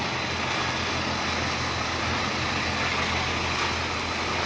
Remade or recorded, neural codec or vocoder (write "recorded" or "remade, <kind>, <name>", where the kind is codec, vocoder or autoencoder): recorded